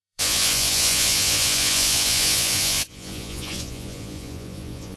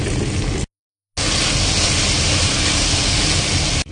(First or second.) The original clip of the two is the second